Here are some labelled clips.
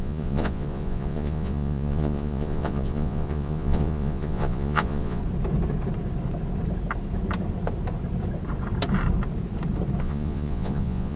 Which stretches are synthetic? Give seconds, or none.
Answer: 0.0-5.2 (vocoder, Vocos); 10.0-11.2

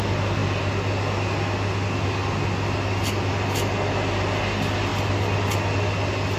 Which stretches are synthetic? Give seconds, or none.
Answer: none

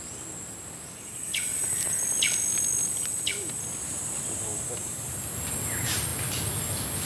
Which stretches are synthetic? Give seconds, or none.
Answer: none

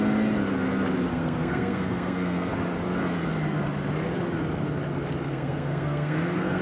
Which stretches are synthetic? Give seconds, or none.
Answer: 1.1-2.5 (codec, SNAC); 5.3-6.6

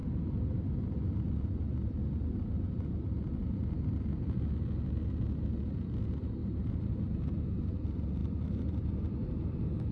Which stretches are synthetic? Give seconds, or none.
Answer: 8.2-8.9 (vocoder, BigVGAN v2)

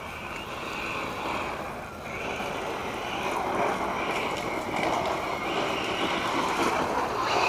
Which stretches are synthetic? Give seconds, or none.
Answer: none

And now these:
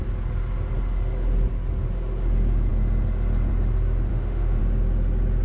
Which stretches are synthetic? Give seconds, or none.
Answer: 4.1-4.6 (autoencoder, DAC-VAE)

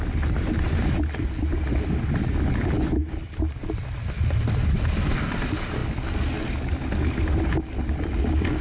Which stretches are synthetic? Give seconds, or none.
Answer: none